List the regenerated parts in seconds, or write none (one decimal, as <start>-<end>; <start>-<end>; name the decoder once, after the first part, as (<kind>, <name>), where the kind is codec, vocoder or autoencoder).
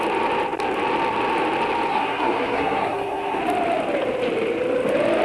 1.9-3.4 (codec, SNAC)